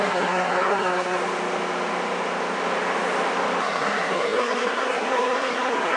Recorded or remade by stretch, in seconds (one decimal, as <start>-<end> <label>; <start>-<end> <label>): 0.0-1.2 remade; 1.2-3.6 recorded; 3.6-6.0 remade